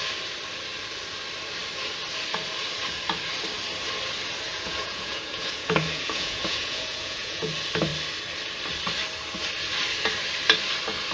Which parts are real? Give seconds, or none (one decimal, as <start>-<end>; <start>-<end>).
0.0-4.5; 7.5-11.1